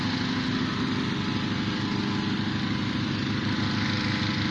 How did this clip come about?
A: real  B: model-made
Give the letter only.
A